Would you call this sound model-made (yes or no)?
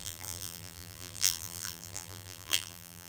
yes